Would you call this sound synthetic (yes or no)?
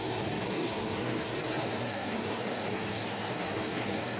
yes